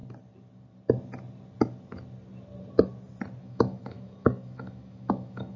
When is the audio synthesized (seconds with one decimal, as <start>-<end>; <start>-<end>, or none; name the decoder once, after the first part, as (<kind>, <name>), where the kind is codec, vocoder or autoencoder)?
3.4-5.6 (autoencoder, DAC-VAE)